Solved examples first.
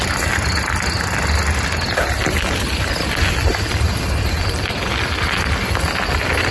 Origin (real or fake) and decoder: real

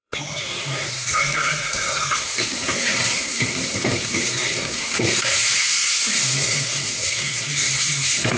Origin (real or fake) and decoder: fake, codec, SNAC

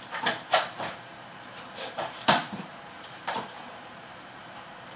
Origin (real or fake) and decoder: fake, vocoder, BigVGAN v2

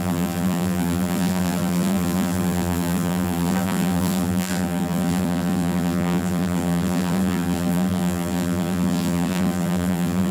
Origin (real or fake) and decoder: fake, vocoder, BigVGAN v2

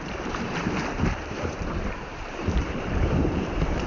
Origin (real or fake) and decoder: fake, vocoder, BigVGAN v2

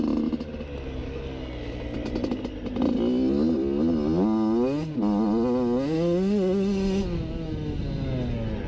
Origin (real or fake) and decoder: real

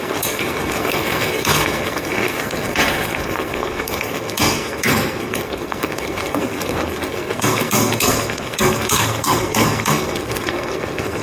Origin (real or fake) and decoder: fake, codec, SNAC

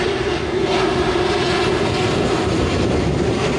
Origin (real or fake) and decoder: real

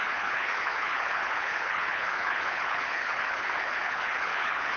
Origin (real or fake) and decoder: fake, codec, HILCodec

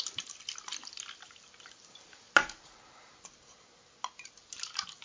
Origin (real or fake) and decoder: real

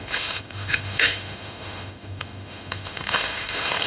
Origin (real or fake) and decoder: fake, autoencoder, DAC-VAE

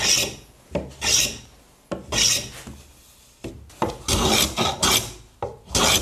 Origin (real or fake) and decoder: real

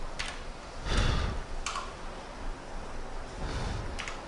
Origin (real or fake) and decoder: real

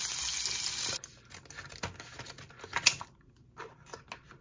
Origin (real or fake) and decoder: real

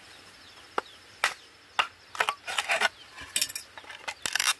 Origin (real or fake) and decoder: real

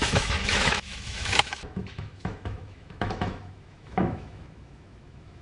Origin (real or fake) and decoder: fake, autoencoder, DAC-VAE